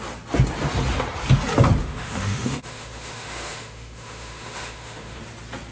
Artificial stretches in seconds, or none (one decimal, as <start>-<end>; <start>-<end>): 1.8-5.2